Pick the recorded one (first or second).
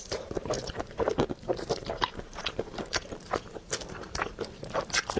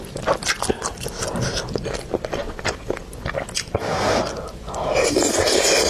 second